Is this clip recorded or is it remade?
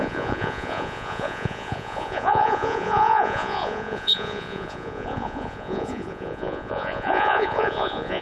remade